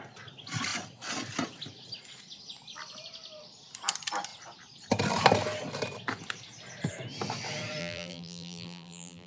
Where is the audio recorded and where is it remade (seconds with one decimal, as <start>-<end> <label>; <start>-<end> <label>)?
0.0-7.8 recorded; 7.8-9.3 remade